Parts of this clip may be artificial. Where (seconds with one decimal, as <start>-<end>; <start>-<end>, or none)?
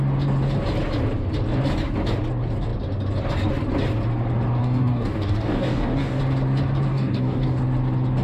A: 4.6-6.2; 6.9-7.6